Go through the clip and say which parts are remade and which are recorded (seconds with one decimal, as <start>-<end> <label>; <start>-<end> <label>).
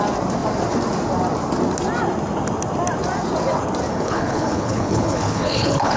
0.0-3.9 recorded; 3.9-6.0 remade